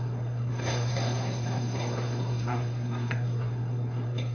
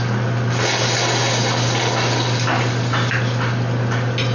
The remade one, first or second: first